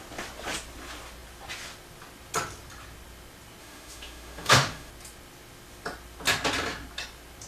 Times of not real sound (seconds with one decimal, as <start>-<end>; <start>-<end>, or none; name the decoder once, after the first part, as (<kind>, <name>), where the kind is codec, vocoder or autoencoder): 3.6-4.9 (autoencoder, DAC-VAE)